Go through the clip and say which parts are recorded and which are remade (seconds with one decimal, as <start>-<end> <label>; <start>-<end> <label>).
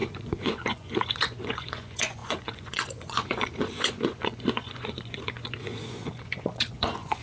0.0-7.2 remade